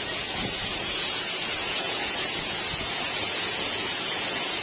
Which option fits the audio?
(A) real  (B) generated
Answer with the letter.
B